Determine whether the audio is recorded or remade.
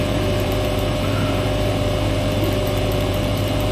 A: remade